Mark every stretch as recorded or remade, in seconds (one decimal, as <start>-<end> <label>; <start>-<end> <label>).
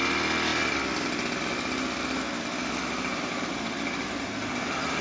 0.0-5.0 recorded